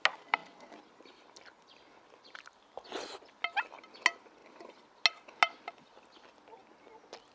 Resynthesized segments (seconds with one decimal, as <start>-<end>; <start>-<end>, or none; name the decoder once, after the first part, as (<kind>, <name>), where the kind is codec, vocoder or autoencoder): none